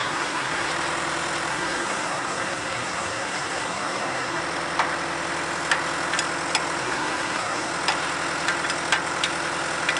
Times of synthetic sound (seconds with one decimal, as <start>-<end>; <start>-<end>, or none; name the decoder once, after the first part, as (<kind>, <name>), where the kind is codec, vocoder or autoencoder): 0.0-0.7 (codec, SNAC); 1.5-4.4; 6.8-7.7